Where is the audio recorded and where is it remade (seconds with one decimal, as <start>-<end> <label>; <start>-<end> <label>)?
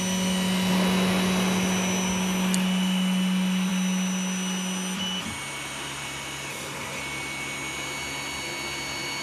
0.0-6.5 recorded; 6.5-7.0 remade; 7.0-9.2 recorded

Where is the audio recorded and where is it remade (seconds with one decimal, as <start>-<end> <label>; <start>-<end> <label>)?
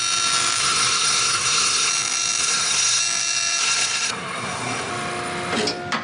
0.0-0.6 recorded; 0.6-1.9 remade; 1.9-2.4 recorded; 2.4-3.0 remade; 3.0-3.6 recorded; 3.6-4.9 remade; 4.9-6.0 recorded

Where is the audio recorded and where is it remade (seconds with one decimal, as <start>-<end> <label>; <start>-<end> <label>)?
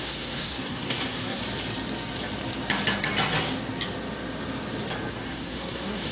0.0-1.4 remade; 1.4-5.1 recorded; 5.1-6.1 remade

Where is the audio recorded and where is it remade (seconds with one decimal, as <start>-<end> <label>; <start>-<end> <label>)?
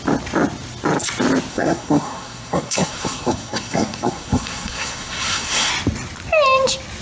0.0-1.5 recorded; 1.5-5.7 remade; 5.7-7.0 recorded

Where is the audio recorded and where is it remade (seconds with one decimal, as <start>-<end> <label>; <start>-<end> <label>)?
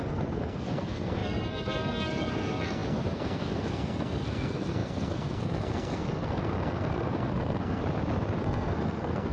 0.0-7.8 remade; 7.8-8.4 recorded; 8.4-9.3 remade